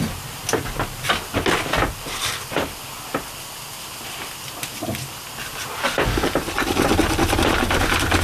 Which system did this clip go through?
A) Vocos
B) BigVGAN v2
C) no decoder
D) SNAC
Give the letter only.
C